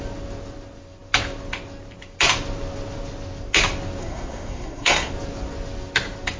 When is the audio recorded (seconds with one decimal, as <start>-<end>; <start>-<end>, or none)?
0.0-4.0; 5.1-6.4